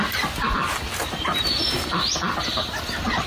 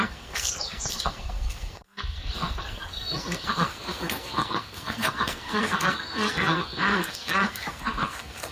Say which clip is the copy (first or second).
second